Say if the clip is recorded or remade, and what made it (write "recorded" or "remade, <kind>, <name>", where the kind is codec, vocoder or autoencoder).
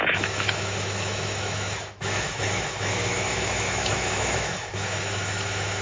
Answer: remade, autoencoder, DAC-VAE